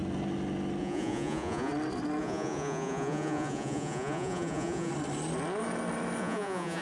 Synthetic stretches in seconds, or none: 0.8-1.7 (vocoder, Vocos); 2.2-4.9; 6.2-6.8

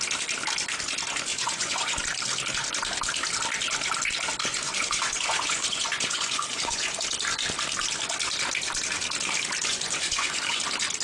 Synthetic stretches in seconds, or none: 1.3-2.0 (vocoder, Vocos); 4.4-7.0; 9.7-10.6

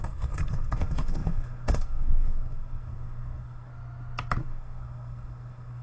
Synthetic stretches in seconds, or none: 0.0-3.7 (codec, SNAC); 4.4-5.8

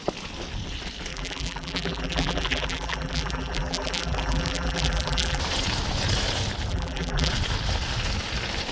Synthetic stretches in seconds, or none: 1.1-5.4 (vocoder, BigVGAN v2); 6.7-7.3

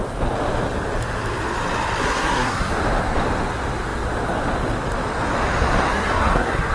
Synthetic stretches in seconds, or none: 2.0-2.7 (codec, SNAC); 5.9-6.7

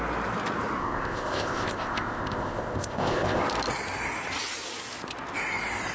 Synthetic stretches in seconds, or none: 0.8-3.4 (codec, ZipCodec)

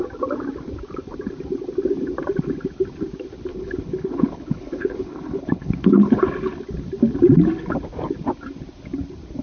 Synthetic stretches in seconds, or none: 3.5-6.2 (codec, HILCodec)

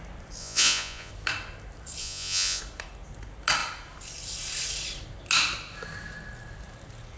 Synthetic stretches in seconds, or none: 0.4-1.1 (vocoder, Vocos); 2.0-2.6